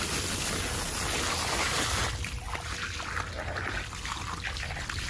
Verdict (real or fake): real